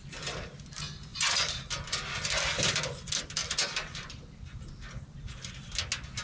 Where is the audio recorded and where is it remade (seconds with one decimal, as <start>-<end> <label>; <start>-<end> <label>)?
0.0-1.1 recorded; 1.1-3.0 remade; 3.0-3.4 recorded; 3.4-4.4 remade; 4.4-6.2 recorded